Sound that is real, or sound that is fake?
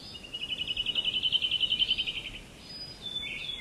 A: real